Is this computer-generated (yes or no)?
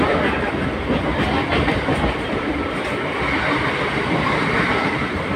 yes